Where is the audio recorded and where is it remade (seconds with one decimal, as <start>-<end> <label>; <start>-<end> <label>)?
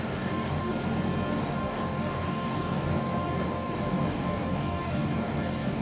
0.0-0.7 remade; 0.7-1.4 recorded; 1.4-5.8 remade